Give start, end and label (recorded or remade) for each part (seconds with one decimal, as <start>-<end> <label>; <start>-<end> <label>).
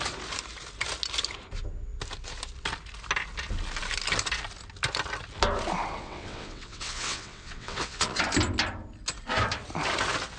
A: 0.0-6.0 recorded; 6.0-8.2 remade; 8.2-10.4 recorded